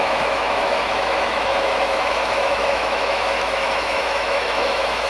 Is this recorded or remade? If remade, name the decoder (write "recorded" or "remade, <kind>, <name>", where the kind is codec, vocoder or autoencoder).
remade, autoencoder, DAC-VAE